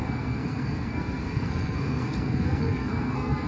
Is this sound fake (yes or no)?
yes